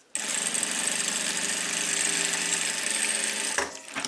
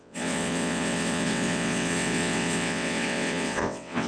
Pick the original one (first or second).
first